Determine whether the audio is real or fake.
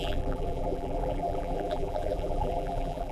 fake